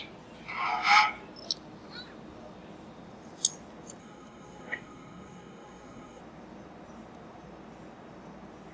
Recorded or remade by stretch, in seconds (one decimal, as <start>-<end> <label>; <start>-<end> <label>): 0.0-4.0 recorded; 4.0-6.2 remade; 6.2-8.7 recorded